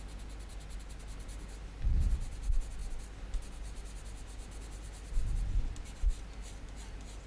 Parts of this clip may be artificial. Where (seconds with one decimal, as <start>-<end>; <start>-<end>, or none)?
none